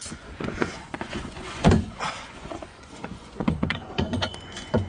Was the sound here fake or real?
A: fake